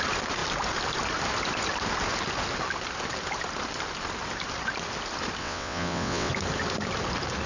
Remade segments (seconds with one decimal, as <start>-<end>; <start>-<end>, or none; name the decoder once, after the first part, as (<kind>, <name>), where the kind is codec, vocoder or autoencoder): 5.4-6.3 (vocoder, WaveNeXt)

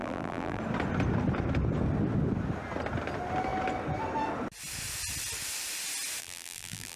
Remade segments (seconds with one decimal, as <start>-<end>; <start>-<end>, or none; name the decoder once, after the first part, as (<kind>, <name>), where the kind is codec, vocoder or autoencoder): 0.0-0.6 (vocoder, BigVGAN v2); 6.2-7.0

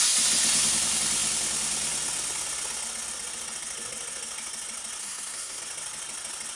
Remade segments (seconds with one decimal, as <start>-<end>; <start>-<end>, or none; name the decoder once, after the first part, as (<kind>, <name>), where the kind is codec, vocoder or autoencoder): 5.0-5.6 (codec, SNAC)

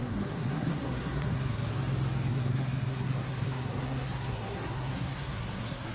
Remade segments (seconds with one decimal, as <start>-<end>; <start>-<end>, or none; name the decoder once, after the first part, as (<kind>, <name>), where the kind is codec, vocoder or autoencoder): 0.0-1.7 (codec, SNAC); 2.3-5.9

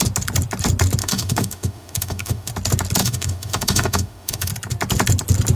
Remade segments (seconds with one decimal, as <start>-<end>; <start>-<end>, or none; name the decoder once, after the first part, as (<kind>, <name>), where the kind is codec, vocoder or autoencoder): 1.0-2.5 (autoencoder, DAC-VAE); 3.0-4.5